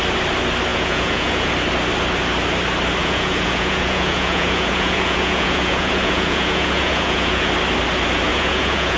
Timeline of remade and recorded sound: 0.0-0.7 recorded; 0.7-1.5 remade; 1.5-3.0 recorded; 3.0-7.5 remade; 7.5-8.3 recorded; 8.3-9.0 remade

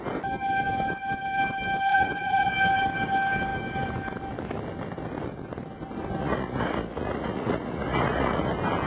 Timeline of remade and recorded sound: 0.0-1.9 recorded; 1.9-2.5 remade; 2.5-6.2 recorded; 6.2-8.5 remade; 8.5-8.9 recorded

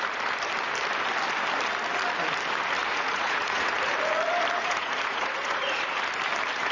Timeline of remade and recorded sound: 0.0-2.8 recorded; 2.8-3.7 remade; 3.7-4.6 recorded; 4.6-5.9 remade; 5.9-6.7 recorded

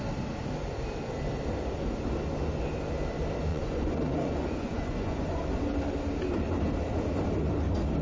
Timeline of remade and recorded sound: 0.0-3.5 recorded; 3.5-5.4 remade; 5.4-8.0 recorded

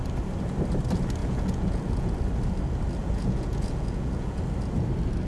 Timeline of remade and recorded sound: 0.0-1.2 recorded; 1.2-2.1 remade; 2.1-3.0 recorded; 3.0-4.4 remade; 4.4-5.3 recorded

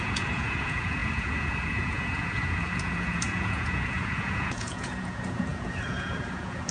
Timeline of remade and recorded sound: 0.0-6.7 remade

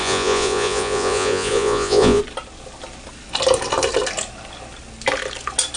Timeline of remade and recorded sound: 0.0-2.2 remade; 2.2-5.8 recorded